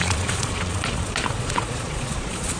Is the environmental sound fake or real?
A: fake